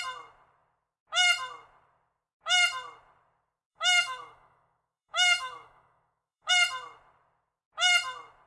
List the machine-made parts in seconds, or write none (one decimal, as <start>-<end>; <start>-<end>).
3.7-6.5

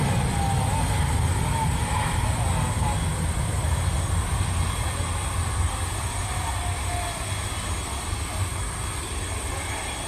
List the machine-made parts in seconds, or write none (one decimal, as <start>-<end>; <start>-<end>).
none

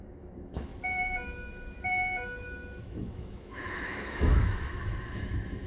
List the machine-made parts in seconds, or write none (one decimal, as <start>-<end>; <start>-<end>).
0.0-0.7; 2.8-5.7

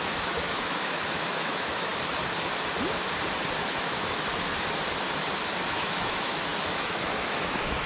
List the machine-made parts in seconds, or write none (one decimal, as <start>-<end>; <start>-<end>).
0.0-1.9; 3.6-4.5; 5.7-7.9

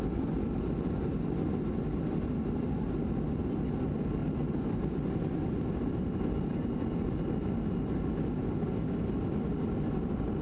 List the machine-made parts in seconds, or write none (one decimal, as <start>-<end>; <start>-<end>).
none

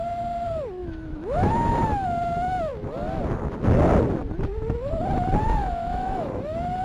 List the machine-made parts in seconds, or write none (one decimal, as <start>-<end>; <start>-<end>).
0.8-1.5; 5.6-6.3

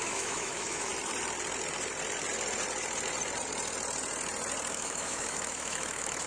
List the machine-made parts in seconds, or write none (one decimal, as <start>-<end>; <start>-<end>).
0.0-0.9; 4.7-6.3